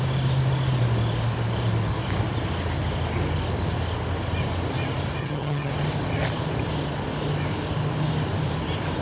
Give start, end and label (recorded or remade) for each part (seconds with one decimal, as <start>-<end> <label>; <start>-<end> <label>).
0.0-5.2 recorded; 5.2-5.7 remade; 5.7-9.0 recorded